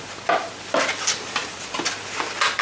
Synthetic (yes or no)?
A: no